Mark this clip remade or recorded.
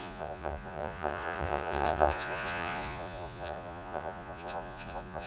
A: remade